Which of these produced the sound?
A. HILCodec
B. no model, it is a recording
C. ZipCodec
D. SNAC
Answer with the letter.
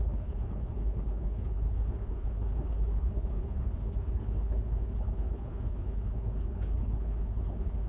A